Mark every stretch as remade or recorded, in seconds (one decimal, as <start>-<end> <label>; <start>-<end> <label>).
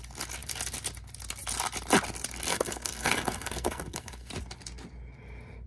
0.0-2.5 recorded; 2.5-4.3 remade; 4.3-5.7 recorded